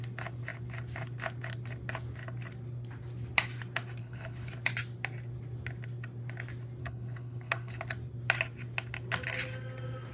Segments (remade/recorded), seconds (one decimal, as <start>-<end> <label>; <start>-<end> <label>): 0.0-4.0 recorded; 4.0-4.5 remade; 4.5-6.8 recorded; 6.8-7.8 remade; 7.8-10.1 recorded